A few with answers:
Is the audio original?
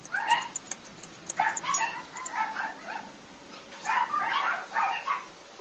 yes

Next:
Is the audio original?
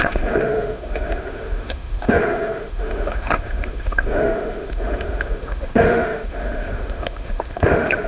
no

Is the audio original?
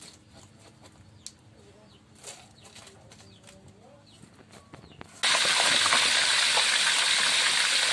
yes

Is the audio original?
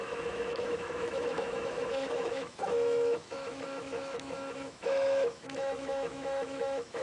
no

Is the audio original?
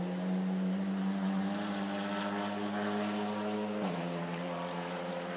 yes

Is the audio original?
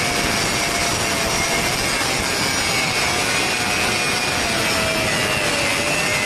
yes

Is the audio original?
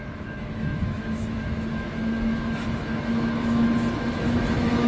no